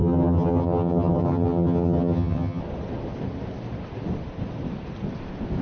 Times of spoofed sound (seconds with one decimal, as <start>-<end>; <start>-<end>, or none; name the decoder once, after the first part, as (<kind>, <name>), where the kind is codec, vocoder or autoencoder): 0.0-2.6 (vocoder, HiFi-GAN)